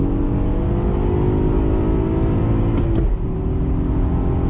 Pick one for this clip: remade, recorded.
recorded